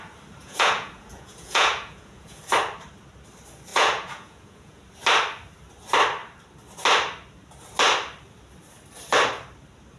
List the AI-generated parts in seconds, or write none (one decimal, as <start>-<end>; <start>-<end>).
0.4-2.4; 3.7-4.8